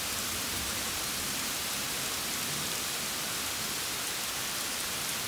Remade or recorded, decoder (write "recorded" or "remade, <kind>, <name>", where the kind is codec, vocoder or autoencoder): remade, vocoder, BigVGAN v2